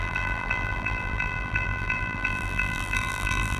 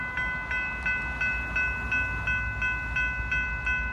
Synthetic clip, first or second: first